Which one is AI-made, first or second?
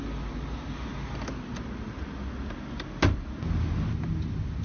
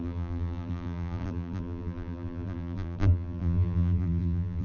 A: second